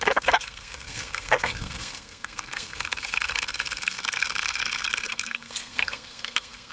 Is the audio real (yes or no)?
no